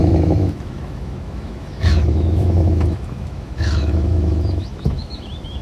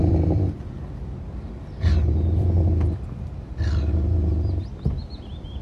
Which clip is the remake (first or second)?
first